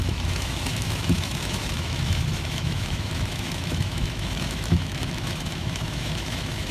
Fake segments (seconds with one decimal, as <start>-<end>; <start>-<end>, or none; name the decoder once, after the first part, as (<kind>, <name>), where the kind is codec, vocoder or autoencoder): 0.0-6.7 (autoencoder, DAC-VAE)